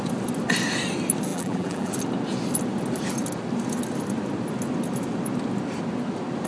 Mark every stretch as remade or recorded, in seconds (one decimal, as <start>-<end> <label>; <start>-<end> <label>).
0.0-1.3 recorded; 1.3-1.9 remade; 1.9-6.5 recorded